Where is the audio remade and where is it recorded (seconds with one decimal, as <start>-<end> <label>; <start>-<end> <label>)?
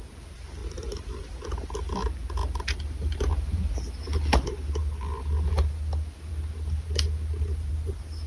0.0-0.6 recorded; 0.6-1.3 remade; 1.3-2.4 recorded; 2.4-3.8 remade; 3.8-8.3 recorded